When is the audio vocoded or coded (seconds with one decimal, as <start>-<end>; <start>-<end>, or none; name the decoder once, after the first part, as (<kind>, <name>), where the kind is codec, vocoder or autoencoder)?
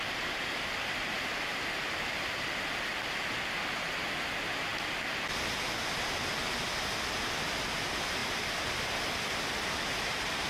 none